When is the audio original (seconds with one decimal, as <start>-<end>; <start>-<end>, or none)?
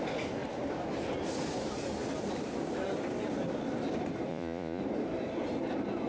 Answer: 0.0-4.3; 4.8-6.1